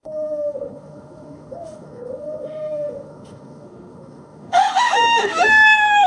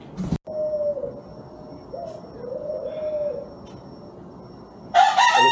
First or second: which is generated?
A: first